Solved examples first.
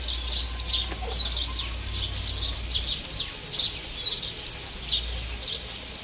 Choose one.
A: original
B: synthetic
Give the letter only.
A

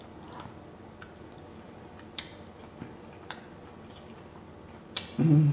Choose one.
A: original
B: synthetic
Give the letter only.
A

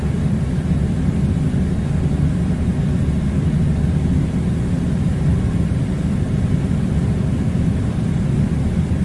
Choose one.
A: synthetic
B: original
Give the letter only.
A